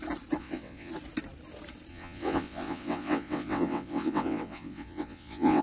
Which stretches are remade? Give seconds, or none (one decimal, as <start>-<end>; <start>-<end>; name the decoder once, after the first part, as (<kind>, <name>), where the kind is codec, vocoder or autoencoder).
0.4-0.9 (vocoder, WaveNeXt); 1.9-5.6